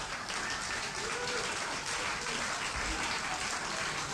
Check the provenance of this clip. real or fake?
real